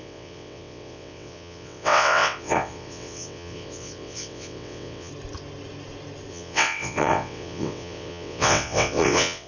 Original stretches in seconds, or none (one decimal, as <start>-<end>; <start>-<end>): 5.1-6.3